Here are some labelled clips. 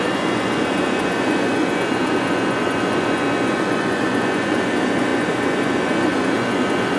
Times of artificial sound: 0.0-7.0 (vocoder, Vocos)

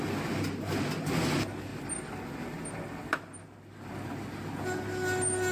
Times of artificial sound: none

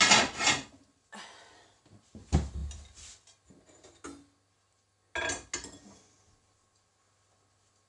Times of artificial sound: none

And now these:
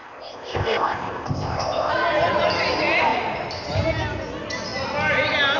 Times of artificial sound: 0.0-1.9 (codec, ZipCodec)

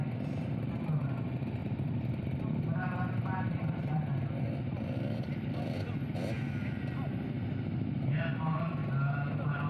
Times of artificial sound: 1.6-6.0 (vocoder, BigVGAN v2)

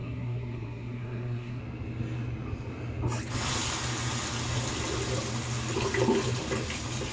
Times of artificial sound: 0.0-1.6 (codec, SNAC)

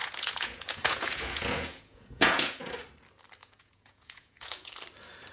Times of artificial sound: 0.0-2.7 (vocoder, Vocos); 3.4-4.7

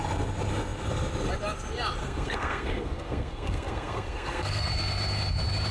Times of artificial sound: 2.0-4.7 (codec, SNAC)